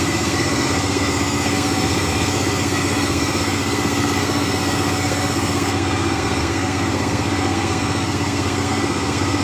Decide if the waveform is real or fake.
fake